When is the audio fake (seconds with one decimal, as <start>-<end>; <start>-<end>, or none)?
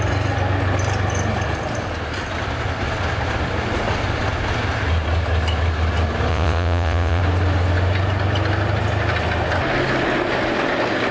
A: 6.3-7.2